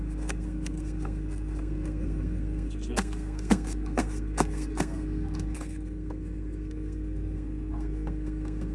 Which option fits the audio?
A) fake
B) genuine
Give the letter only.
A